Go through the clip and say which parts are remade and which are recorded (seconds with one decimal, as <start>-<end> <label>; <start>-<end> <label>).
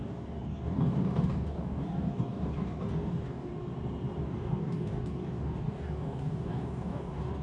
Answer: 0.0-3.5 remade; 3.5-4.2 recorded; 4.2-7.4 remade